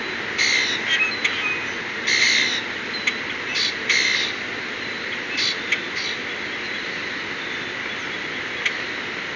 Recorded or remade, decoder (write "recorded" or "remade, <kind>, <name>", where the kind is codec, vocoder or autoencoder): recorded